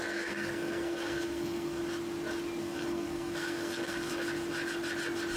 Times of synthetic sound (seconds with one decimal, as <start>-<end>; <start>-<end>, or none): 0.0-1.8; 2.6-4.1